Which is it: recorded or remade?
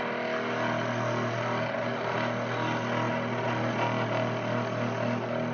recorded